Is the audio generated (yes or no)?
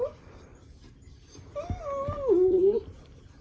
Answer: no